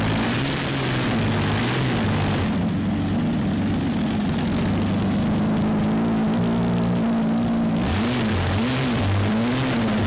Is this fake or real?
real